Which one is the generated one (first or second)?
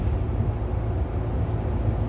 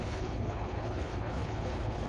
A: second